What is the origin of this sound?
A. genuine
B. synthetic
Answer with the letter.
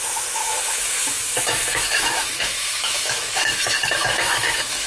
B